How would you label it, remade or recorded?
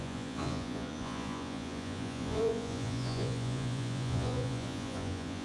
remade